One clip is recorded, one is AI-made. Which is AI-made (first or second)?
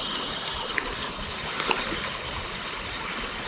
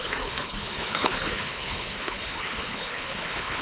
second